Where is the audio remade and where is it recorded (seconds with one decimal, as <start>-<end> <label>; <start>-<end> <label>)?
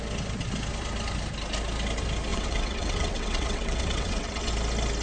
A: 0.0-2.3 recorded; 2.3-4.5 remade; 4.5-5.0 recorded